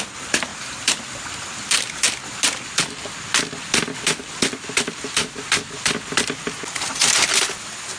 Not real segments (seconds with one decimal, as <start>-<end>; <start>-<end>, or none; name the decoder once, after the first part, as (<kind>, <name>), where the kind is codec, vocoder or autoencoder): none